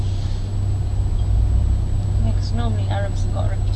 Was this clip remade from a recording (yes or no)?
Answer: no